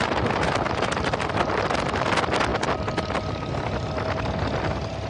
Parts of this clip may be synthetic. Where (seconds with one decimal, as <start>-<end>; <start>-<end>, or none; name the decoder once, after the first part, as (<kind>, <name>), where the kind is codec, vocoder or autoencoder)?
none